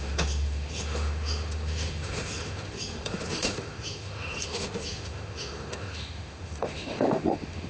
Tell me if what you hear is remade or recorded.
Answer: remade